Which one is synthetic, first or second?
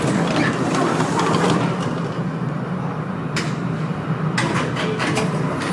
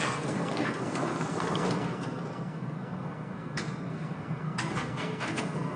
second